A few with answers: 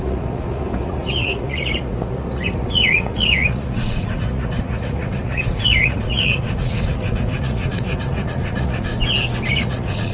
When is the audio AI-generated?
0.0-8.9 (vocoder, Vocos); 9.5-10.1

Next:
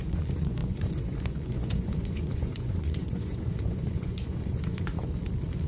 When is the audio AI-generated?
0.0-5.0 (vocoder, Vocos)

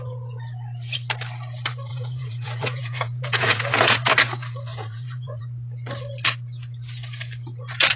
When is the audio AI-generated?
1.9-4.1 (vocoder, Vocos); 4.7-5.4

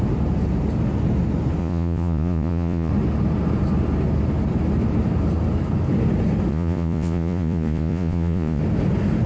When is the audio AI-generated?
1.6-2.9 (vocoder, Vocos); 6.5-8.6

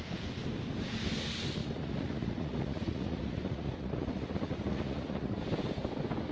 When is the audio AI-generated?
1.6-5.4 (vocoder, Vocos)